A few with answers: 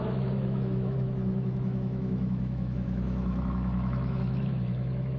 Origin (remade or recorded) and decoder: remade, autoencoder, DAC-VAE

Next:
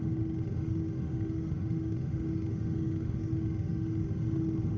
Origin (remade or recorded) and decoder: remade, autoencoder, DAC-VAE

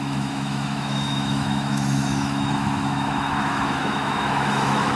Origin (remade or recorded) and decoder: remade, autoencoder, DAC-VAE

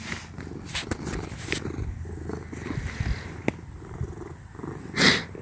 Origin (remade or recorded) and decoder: recorded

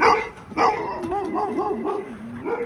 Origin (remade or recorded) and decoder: recorded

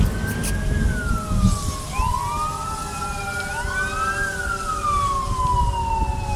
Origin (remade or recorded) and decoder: recorded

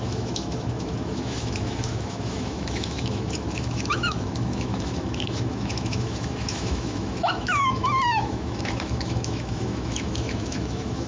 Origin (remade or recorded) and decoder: remade, autoencoder, DAC-VAE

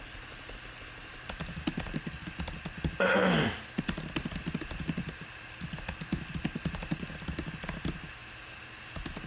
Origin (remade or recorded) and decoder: recorded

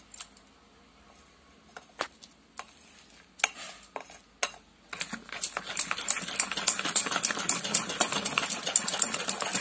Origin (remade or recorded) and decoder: recorded